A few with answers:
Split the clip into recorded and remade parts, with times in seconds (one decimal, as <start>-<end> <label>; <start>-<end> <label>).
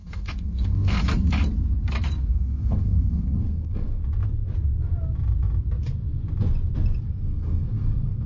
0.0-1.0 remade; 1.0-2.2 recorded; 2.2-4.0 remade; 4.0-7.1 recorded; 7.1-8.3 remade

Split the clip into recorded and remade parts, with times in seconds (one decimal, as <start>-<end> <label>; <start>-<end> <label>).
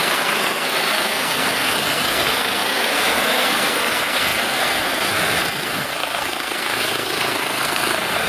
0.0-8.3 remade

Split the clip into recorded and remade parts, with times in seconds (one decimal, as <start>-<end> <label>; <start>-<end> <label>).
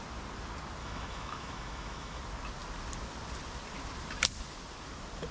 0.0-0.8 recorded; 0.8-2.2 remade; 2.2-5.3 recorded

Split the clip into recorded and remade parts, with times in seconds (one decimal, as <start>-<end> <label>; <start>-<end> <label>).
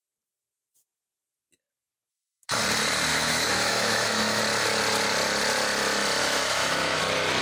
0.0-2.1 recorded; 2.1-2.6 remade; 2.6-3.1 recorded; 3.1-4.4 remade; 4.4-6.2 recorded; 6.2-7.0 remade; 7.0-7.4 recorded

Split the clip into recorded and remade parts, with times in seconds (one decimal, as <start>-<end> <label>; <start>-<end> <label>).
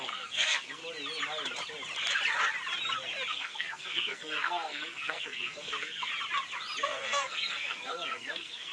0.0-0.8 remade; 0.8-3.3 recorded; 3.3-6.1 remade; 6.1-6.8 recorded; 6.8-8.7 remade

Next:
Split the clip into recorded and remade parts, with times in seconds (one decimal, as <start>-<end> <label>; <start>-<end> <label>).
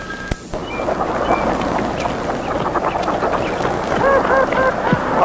0.0-5.2 recorded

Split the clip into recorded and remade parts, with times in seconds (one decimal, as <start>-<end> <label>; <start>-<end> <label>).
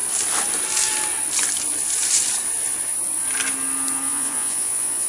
0.0-4.1 recorded; 4.1-5.1 remade